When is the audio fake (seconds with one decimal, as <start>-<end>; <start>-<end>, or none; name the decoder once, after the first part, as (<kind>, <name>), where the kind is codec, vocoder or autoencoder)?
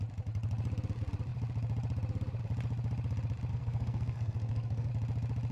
3.5-4.9 (codec, SNAC)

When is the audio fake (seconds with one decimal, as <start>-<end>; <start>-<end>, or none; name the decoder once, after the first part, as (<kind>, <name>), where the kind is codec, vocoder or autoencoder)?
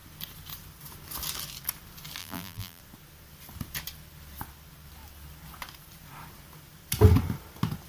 2.2-2.8 (vocoder, BigVGAN v2)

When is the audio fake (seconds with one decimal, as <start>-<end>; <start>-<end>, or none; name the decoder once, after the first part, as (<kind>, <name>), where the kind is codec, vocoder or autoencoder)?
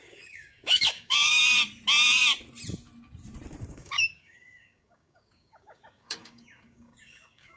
0.0-1.4 (codec, DAC); 3.7-7.6